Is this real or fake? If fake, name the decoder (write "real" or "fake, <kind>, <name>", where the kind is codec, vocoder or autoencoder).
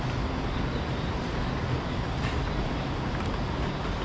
real